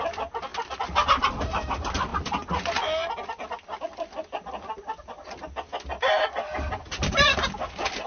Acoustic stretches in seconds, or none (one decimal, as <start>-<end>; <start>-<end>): 0.0-8.1